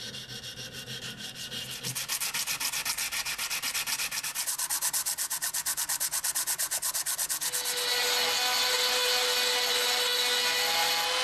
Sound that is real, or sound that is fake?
real